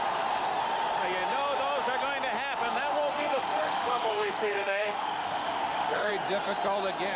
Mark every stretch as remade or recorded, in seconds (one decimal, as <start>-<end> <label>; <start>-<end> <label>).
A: 0.0-3.1 recorded; 3.1-6.1 remade; 6.1-7.2 recorded